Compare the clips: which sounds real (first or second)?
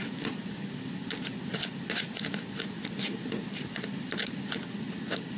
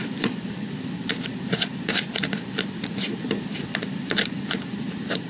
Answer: first